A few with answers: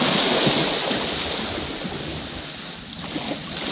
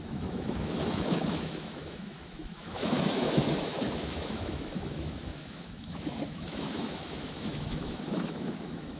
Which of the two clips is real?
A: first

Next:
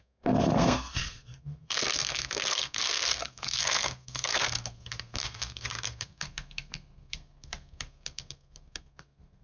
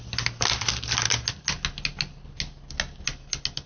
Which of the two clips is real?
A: second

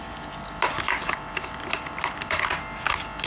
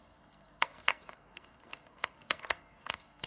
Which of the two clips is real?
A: first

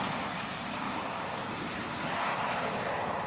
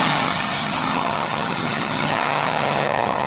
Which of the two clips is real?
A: first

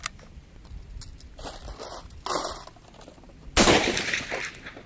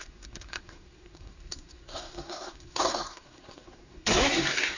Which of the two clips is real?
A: first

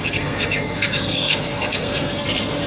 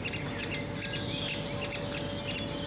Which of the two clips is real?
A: second